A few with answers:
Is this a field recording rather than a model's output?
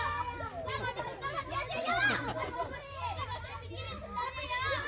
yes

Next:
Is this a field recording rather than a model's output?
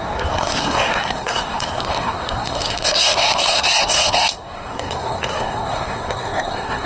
no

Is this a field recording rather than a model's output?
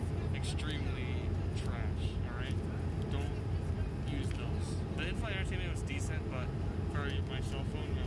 yes